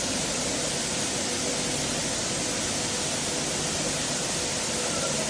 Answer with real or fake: real